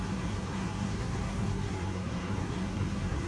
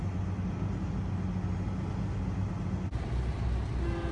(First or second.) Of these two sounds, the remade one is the first